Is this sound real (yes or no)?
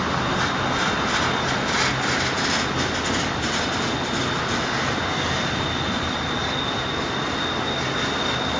yes